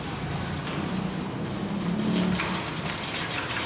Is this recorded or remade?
recorded